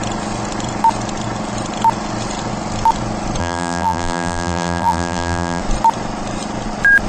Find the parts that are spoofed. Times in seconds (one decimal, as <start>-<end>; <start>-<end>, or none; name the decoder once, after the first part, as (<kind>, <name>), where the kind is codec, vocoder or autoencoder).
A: 3.4-5.6 (vocoder, BigVGAN v2)